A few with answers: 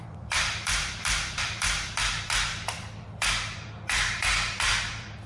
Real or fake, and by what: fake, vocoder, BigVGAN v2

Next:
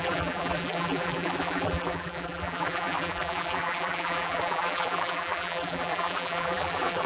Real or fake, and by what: fake, vocoder, BigVGAN v2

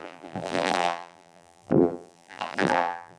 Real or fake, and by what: fake, vocoder, BigVGAN v2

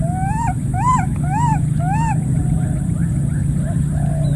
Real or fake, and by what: real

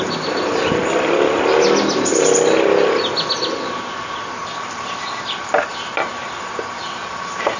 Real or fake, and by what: real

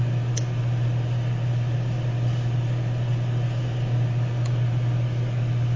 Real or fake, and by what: real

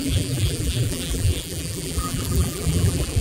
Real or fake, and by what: fake, vocoder, BigVGAN v2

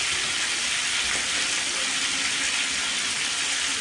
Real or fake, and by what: real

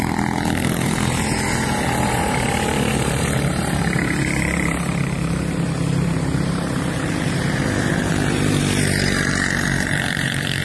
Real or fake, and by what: fake, vocoder, BigVGAN v2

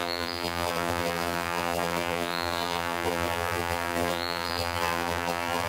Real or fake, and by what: fake, vocoder, BigVGAN v2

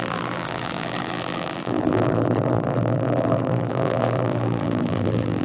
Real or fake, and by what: fake, vocoder, BigVGAN v2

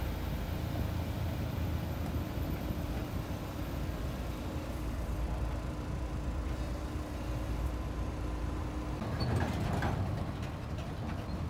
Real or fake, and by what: fake, vocoder, BigVGAN v2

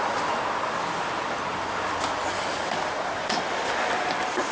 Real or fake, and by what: fake, vocoder, BigVGAN v2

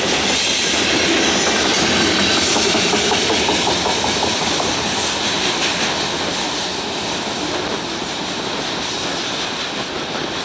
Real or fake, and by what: fake, vocoder, BigVGAN v2